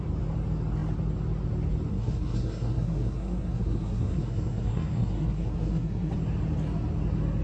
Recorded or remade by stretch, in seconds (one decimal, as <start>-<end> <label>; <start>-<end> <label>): 0.0-1.9 recorded; 1.9-6.1 remade; 6.1-7.4 recorded